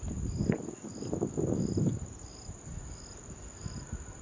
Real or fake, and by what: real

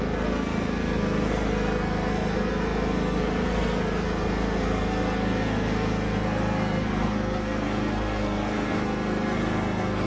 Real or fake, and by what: fake, codec, SNAC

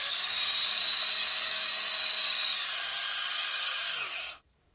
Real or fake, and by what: fake, codec, DAC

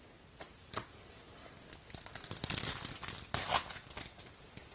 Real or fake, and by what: real